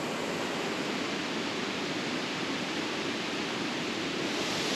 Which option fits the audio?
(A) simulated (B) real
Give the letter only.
B